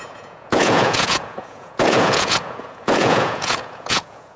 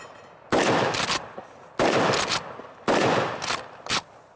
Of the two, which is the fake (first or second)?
first